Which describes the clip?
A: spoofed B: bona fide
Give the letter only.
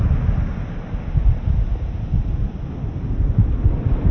B